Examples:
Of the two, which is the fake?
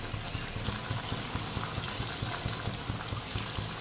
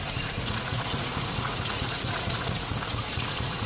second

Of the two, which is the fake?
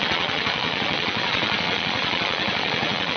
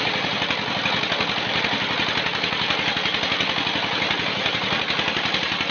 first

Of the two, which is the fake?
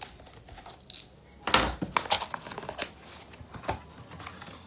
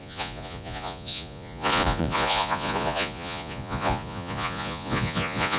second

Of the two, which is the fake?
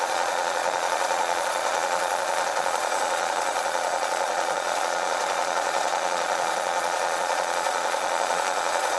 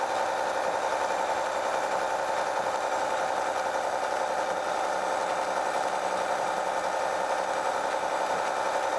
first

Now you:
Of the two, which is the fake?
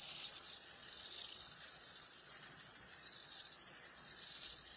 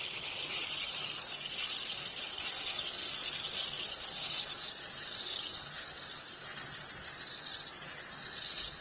first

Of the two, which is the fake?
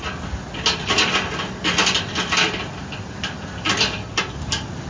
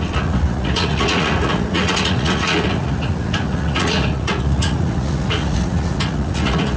second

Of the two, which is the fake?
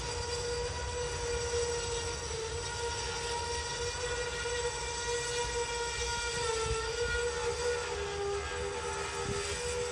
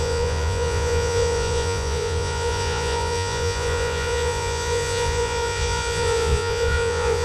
second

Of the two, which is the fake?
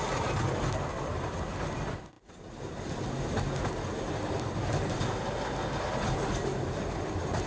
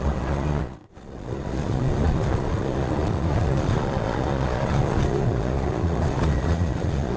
second